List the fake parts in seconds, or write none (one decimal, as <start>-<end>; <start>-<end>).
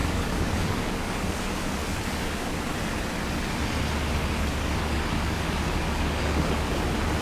0.0-2.5; 4.2-6.8